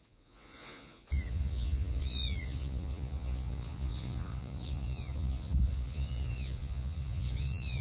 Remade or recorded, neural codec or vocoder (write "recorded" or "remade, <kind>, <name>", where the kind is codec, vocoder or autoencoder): remade, vocoder, Vocos